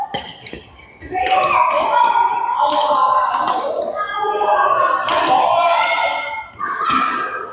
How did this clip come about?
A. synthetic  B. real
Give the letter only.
B